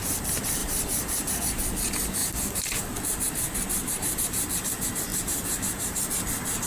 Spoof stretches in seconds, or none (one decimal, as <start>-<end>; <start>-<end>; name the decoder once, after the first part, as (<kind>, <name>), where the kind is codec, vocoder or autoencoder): 0.6-1.4 (vocoder, BigVGAN v2); 2.2-2.8; 5.1-6.1